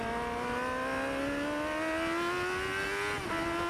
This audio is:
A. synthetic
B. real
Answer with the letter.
B